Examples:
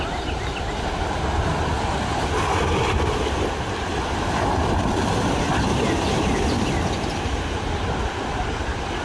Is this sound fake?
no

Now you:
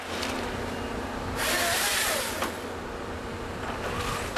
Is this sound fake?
no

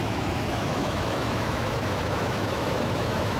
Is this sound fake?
yes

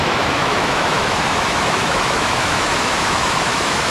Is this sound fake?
yes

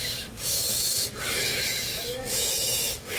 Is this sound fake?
yes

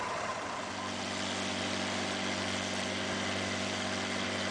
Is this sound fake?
no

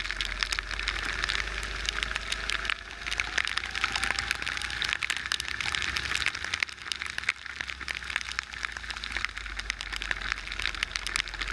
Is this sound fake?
no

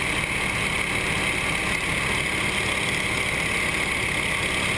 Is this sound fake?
no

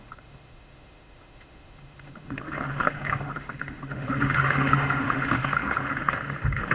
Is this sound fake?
yes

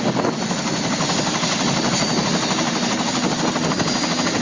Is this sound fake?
no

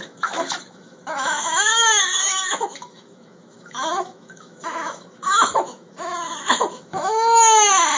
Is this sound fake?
yes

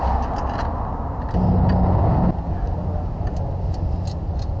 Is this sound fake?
no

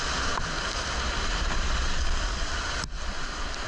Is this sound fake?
no